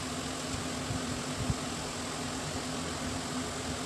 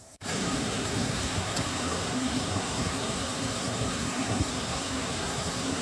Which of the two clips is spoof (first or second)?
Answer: second